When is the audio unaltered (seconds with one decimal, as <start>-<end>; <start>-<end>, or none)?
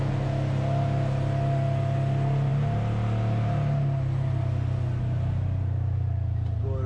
0.0-6.9